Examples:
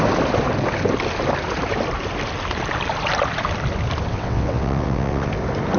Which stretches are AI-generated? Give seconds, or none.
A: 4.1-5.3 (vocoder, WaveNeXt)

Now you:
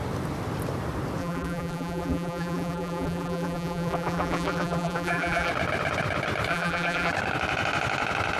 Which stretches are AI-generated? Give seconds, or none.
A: 1.2-5.5 (vocoder, BigVGAN v2); 6.5-7.1

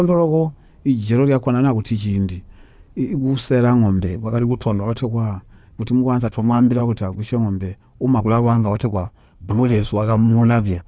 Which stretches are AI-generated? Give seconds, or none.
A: 0.0-0.7 (codec, SNAC); 4.0-5.0; 6.2-6.8; 8.2-10.9